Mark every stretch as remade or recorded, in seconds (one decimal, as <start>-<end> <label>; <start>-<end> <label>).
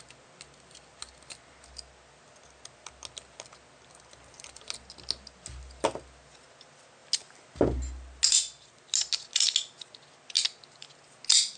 0.0-11.6 recorded